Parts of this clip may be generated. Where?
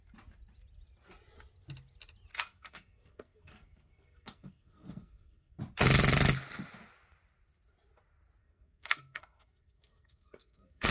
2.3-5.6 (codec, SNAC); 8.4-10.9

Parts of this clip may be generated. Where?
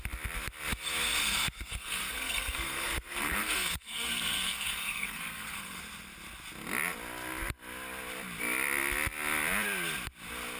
1.2-5.8 (codec, SNAC)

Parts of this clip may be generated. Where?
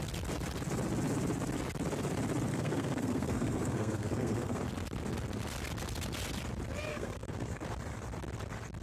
2.5-4.6 (codec, SNAC); 6.9-7.6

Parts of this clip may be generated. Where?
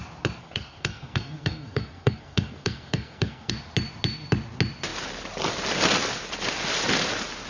0.4-3.5 (codec, SNAC)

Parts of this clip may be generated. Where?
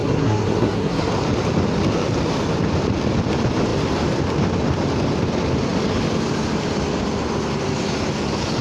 0.0-1.1 (codec, SNAC)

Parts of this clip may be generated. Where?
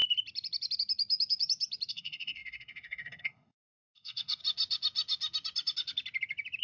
1.9-4.4 (codec, SNAC)